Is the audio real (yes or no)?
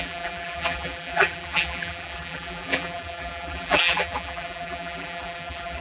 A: no